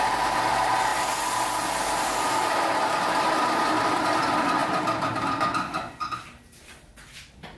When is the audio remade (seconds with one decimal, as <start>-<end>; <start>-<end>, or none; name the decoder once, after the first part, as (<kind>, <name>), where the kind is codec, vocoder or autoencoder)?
none